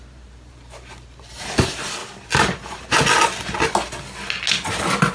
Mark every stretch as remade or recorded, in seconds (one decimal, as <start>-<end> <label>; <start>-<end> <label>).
0.0-2.0 remade; 2.0-5.1 recorded

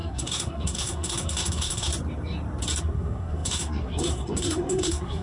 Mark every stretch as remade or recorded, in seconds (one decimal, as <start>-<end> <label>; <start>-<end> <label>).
0.0-1.9 remade; 1.9-2.8 recorded; 2.8-5.2 remade

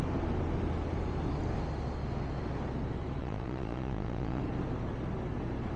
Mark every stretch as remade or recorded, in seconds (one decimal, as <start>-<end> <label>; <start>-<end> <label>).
0.0-3.2 recorded; 3.2-4.4 remade; 4.4-5.8 recorded